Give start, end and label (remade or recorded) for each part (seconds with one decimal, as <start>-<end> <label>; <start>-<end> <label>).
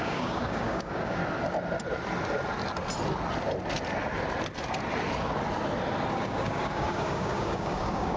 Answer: 0.0-1.2 remade; 1.2-6.1 recorded; 6.1-8.2 remade